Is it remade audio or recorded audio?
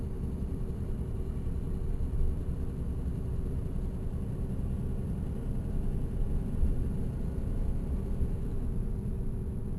recorded